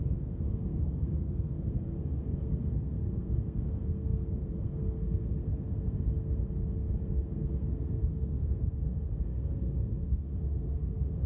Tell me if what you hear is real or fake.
fake